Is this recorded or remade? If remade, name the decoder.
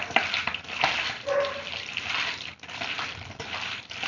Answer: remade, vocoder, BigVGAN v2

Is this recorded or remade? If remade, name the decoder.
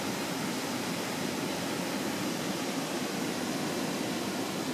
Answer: recorded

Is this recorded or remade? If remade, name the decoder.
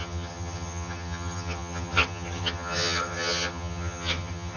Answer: remade, vocoder, HiFi-GAN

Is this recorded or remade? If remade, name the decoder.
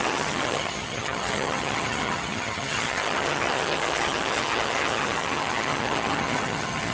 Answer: remade, vocoder, HiFi-GAN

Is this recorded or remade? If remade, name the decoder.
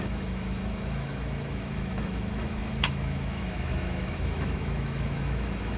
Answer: remade, autoencoder, DAC-VAE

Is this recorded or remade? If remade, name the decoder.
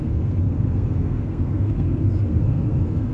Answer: remade, codec, SNAC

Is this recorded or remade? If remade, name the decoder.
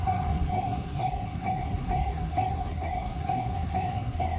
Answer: remade, codec, SNAC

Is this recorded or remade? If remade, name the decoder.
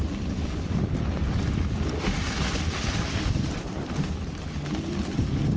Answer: recorded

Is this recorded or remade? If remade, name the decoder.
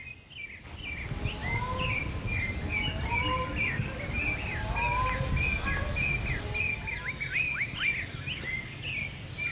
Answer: recorded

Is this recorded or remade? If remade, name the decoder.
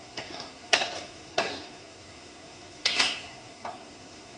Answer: remade, codec, SNAC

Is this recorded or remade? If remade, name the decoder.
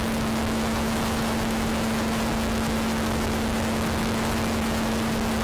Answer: remade, autoencoder, DAC-VAE